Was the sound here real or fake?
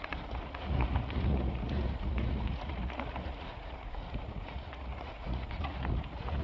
fake